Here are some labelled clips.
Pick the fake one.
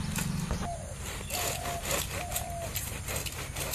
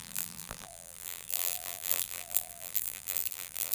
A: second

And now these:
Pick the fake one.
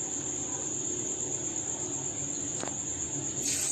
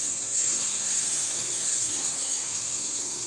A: second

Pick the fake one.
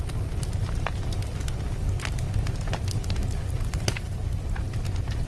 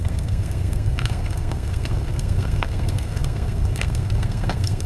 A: second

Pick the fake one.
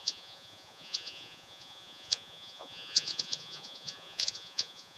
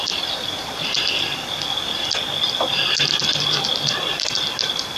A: first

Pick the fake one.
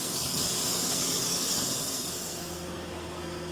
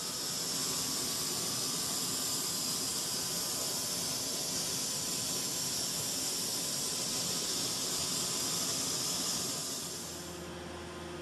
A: first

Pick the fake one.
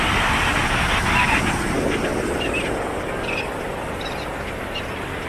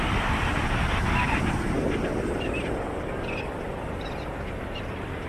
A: second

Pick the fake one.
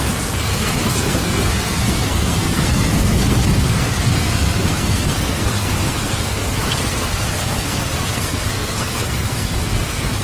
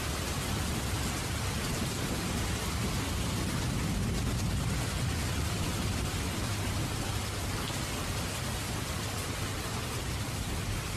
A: first